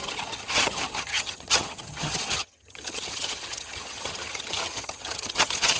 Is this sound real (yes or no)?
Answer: no